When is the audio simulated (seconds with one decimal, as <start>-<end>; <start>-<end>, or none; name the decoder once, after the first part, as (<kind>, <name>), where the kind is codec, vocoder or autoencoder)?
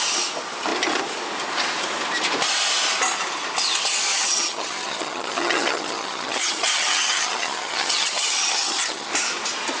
4.1-9.1 (vocoder, HiFi-GAN)